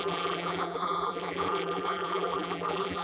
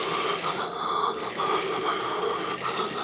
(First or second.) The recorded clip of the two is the second